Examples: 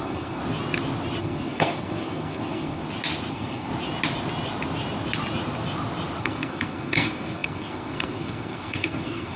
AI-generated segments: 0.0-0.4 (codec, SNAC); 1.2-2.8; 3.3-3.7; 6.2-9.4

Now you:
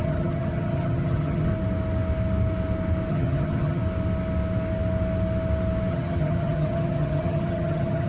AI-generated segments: 0.0-1.5 (vocoder, HiFi-GAN); 3.1-3.8; 5.9-8.1

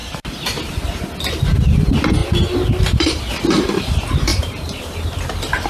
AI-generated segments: none